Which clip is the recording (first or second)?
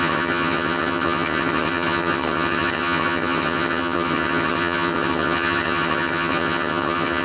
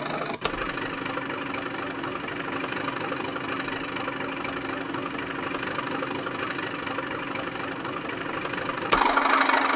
second